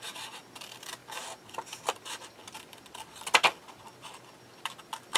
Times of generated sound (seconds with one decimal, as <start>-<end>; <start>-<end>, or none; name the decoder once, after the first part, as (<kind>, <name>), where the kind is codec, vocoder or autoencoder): none